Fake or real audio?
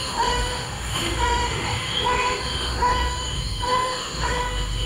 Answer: fake